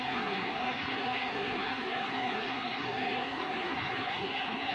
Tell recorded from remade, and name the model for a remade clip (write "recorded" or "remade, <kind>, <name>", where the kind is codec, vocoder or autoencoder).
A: remade, codec, SNAC